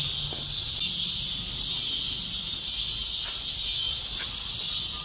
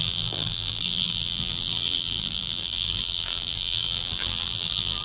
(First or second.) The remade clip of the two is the second